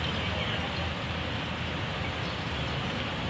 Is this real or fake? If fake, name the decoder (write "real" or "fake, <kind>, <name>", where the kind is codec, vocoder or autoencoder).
real